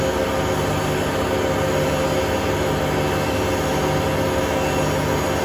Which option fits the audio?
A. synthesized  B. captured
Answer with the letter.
B